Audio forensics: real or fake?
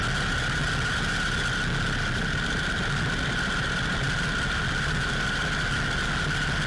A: real